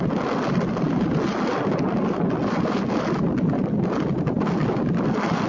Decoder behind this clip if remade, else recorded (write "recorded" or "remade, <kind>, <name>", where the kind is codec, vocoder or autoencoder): recorded